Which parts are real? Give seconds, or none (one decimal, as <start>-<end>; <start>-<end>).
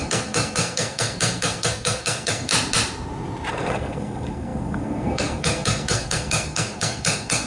2.5-3.5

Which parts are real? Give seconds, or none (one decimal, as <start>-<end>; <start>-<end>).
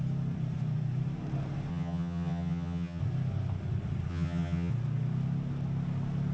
0.0-1.7; 3.0-4.1; 4.7-6.3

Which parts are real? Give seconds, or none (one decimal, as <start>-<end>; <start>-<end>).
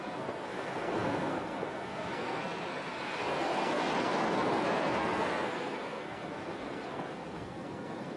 none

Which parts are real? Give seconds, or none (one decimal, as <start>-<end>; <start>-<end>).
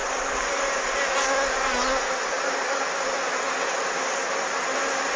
0.0-5.2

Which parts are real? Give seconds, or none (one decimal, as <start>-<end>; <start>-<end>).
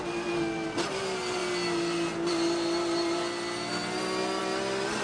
0.0-5.0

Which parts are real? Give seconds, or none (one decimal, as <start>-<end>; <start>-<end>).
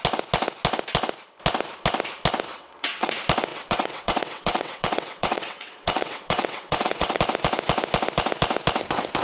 0.0-2.5; 3.1-3.5; 7.2-9.2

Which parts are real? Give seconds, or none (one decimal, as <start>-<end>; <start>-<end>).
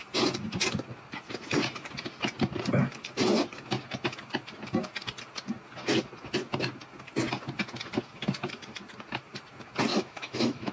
0.0-9.9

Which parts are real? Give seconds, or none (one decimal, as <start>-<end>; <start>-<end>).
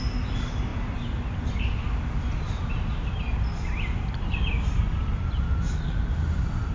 0.0-6.7